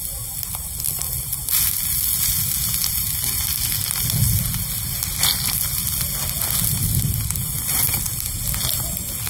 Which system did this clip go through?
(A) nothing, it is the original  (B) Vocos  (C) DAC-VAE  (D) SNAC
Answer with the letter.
A